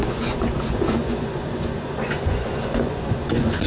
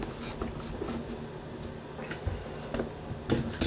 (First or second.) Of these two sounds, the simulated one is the first